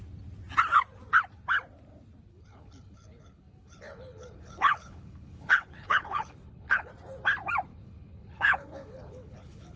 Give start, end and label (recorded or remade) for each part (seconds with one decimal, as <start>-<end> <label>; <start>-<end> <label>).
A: 0.0-2.3 recorded; 2.3-6.9 remade; 6.9-7.7 recorded; 7.7-9.8 remade